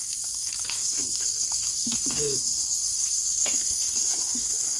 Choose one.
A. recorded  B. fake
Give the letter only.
B